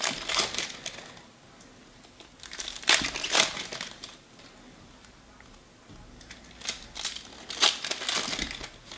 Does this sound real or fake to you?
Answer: real